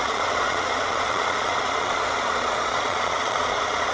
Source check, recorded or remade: remade